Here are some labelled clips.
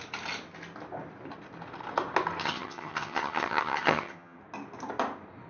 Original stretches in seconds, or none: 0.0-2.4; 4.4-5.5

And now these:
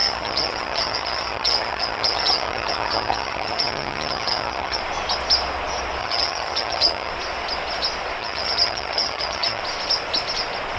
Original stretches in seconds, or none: 4.8-6.0; 7.1-8.2; 9.6-10.8

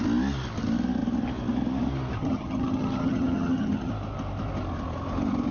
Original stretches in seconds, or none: 0.0-2.2; 3.9-5.5

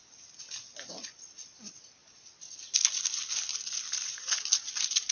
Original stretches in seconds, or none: 0.0-5.1

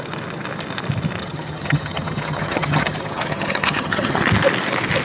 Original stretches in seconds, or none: 0.0-1.2; 4.2-5.0

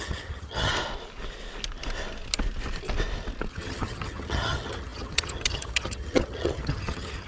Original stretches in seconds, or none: 0.7-3.5

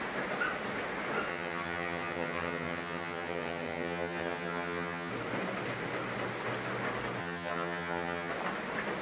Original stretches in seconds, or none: 0.0-1.3; 5.1-7.2; 8.3-9.0

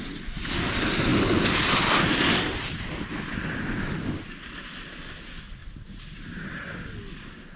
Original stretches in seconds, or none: 0.0-7.6